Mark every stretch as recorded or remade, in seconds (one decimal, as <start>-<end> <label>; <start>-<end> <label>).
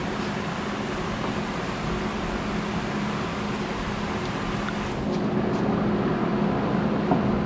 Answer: 0.0-7.5 recorded